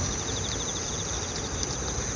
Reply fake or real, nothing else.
real